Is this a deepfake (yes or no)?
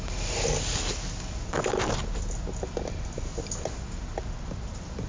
no